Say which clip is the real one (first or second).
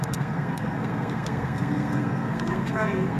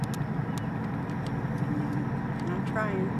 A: second